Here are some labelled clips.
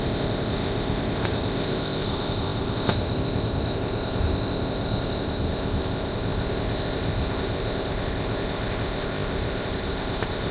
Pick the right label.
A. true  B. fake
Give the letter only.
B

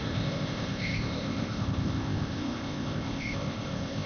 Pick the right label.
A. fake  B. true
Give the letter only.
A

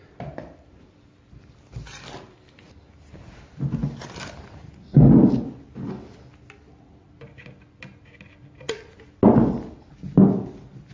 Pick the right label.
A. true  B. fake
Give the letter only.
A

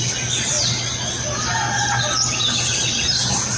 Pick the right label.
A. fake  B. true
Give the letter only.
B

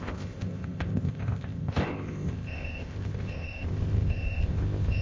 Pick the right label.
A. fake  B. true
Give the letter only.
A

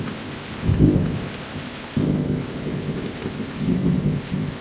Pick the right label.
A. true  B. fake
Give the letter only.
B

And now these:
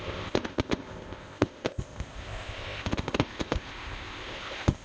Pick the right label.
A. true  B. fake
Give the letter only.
B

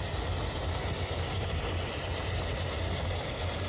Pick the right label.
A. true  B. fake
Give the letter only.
A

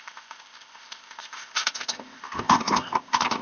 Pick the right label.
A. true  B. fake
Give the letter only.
B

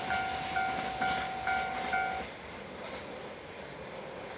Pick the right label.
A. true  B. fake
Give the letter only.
A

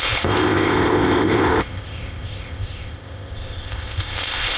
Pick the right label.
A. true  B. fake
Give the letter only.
B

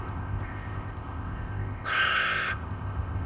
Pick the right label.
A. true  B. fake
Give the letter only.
B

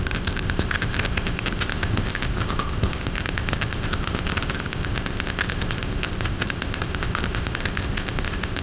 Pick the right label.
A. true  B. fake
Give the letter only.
B